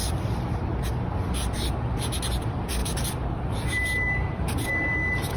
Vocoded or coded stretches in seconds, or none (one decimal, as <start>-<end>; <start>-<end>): 2.8-3.8